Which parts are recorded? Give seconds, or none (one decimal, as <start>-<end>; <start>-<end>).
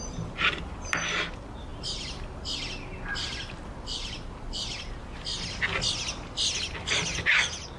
0.0-7.1